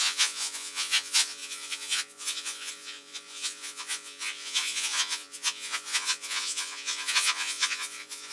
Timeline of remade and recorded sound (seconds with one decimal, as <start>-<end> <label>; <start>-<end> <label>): 0.0-8.3 remade